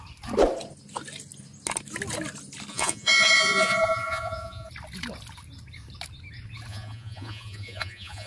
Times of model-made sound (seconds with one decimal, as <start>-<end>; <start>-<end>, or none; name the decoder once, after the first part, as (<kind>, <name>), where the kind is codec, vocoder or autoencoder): 2.7-4.7 (vocoder, Vocos); 6.7-8.3